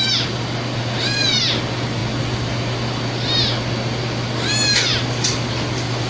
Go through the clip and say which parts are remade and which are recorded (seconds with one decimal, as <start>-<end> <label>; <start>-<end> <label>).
0.0-6.1 recorded